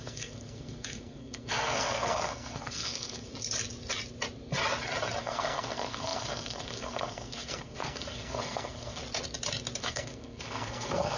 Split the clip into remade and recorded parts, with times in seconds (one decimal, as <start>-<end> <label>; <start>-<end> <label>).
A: 0.0-3.3 remade; 3.3-5.2 recorded; 5.2-9.0 remade; 9.0-9.8 recorded; 9.8-11.2 remade